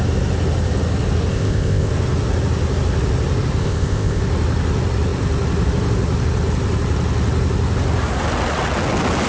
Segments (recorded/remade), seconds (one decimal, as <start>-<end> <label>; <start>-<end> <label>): 0.0-1.3 recorded; 1.3-1.9 remade; 1.9-3.6 recorded; 3.6-4.2 remade; 4.2-9.3 recorded